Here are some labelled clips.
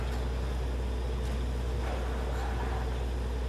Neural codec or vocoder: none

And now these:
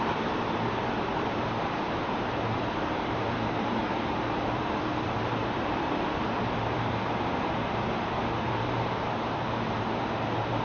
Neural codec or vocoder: vocoder, BigVGAN v2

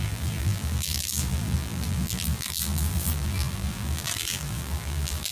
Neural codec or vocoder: vocoder, BigVGAN v2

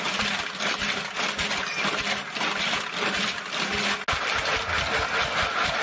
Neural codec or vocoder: none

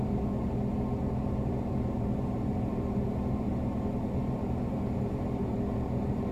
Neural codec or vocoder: vocoder, BigVGAN v2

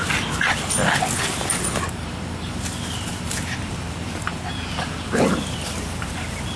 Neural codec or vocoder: vocoder, BigVGAN v2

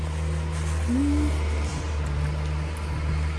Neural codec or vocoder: none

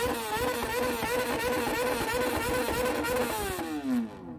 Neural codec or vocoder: none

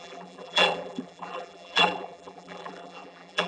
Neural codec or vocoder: vocoder, BigVGAN v2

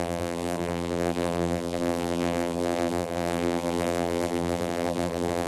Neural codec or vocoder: vocoder, BigVGAN v2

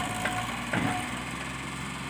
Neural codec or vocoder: vocoder, BigVGAN v2